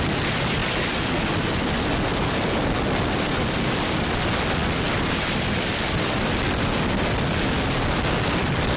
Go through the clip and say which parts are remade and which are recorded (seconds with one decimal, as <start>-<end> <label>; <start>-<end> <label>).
0.0-8.8 recorded